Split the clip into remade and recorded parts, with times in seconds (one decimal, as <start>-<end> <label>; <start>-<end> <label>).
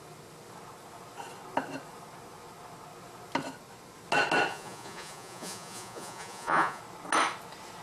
0.0-4.5 recorded; 4.5-6.8 remade; 6.8-7.8 recorded